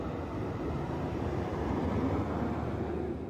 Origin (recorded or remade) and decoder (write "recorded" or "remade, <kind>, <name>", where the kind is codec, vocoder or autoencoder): recorded